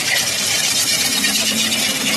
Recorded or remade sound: remade